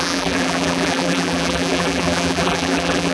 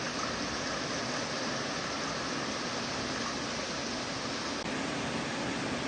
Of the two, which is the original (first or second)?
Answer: second